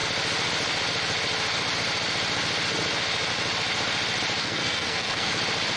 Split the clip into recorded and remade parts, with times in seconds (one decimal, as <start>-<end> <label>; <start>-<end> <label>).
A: 0.0-4.4 recorded; 4.4-5.3 remade; 5.3-5.8 recorded